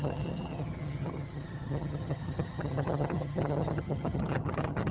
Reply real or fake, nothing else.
fake